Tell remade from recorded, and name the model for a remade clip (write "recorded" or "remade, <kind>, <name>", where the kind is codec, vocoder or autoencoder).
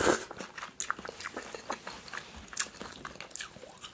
recorded